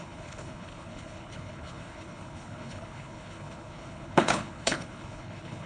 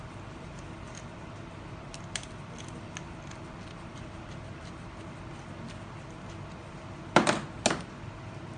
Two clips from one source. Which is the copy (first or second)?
first